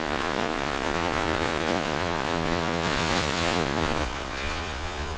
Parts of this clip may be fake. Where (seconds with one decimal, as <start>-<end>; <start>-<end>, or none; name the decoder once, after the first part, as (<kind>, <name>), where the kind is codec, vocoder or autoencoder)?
0.0-5.2 (vocoder, Vocos)